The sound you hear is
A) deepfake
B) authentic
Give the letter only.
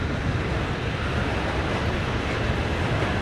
B